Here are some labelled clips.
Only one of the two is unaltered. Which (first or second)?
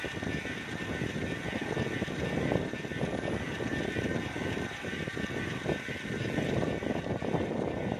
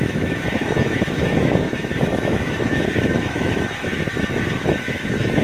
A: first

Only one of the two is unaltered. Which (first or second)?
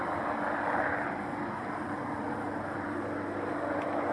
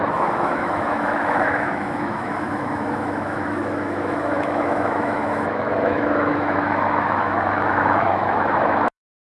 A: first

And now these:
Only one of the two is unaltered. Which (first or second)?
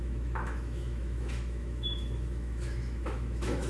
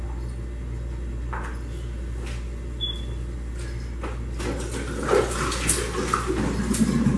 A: second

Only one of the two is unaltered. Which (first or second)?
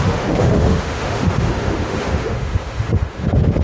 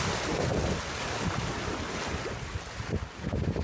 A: second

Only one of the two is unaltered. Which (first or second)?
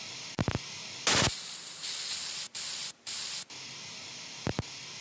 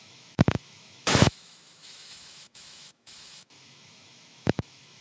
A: first